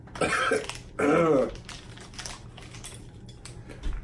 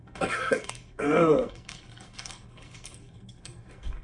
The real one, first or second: first